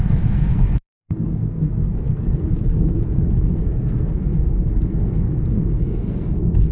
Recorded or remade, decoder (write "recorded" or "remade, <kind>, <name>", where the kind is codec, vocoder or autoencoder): remade, codec, SNAC